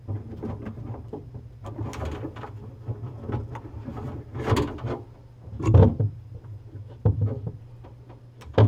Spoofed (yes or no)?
no